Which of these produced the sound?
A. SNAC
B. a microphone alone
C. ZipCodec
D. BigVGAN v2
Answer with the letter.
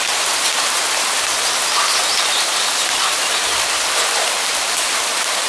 B